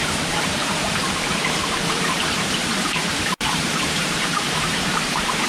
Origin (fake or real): fake